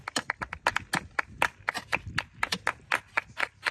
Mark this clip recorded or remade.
recorded